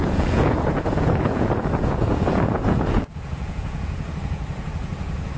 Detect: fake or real fake